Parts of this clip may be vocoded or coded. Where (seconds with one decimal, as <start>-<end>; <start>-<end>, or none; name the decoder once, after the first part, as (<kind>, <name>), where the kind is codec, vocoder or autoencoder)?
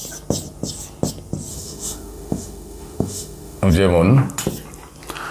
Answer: 1.5-3.7 (autoencoder, DAC-VAE)